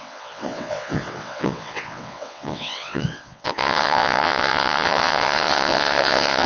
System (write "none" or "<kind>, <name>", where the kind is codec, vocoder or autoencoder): vocoder, WaveNeXt